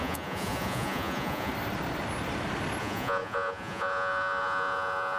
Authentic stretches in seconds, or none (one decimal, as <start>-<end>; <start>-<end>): 1.5-2.8